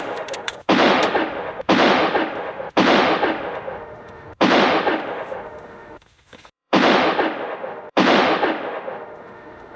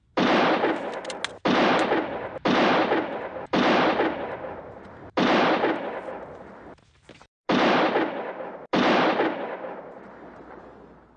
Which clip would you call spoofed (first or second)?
first